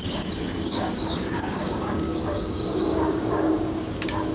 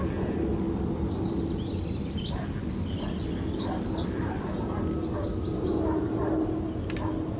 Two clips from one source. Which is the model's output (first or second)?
first